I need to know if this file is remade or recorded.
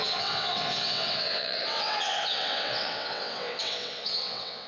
remade